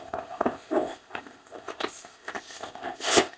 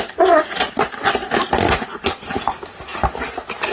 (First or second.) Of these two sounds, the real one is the second